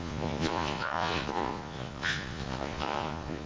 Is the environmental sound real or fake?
fake